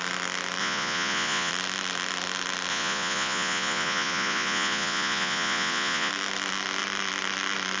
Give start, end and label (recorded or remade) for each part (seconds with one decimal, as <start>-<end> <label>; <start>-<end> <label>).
0.0-0.6 recorded; 0.6-1.5 remade; 1.5-2.7 recorded; 2.7-6.1 remade; 6.1-7.8 recorded